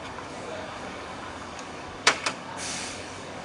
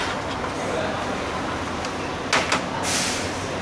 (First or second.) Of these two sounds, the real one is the second